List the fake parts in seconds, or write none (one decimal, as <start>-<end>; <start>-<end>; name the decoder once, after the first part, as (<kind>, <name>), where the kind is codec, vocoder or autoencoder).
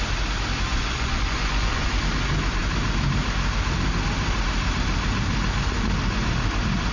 0.7-1.9 (vocoder, Vocos)